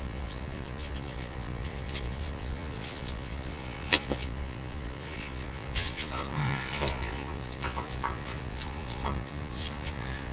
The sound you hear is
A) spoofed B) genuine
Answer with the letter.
A